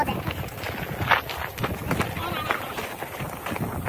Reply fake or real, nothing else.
real